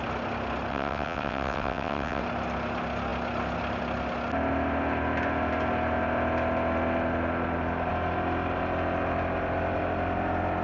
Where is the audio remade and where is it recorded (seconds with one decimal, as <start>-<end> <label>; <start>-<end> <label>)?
0.0-0.7 recorded; 0.7-2.2 remade; 2.2-10.6 recorded